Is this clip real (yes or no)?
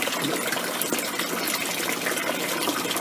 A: yes